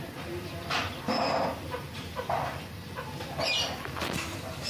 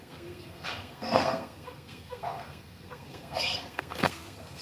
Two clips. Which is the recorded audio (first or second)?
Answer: first